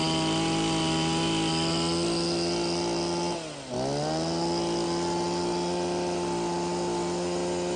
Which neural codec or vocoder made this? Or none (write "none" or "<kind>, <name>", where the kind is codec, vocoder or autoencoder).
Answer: none